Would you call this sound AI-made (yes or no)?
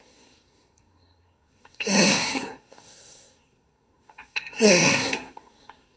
yes